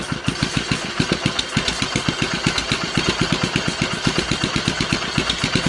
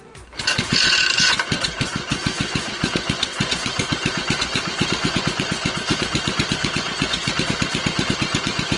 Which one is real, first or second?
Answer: first